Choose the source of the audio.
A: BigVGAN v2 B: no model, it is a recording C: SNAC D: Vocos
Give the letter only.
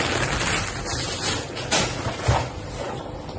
B